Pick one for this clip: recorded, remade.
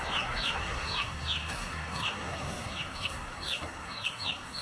remade